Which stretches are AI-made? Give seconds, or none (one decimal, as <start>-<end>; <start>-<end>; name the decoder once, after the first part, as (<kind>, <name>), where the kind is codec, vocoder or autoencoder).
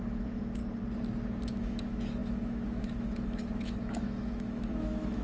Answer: 0.0-0.6 (autoencoder, DAC-VAE); 1.4-5.2